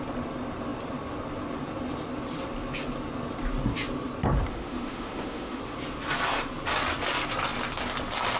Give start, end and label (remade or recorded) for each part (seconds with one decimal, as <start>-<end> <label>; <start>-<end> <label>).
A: 0.0-4.5 recorded; 4.5-5.6 remade; 5.6-8.4 recorded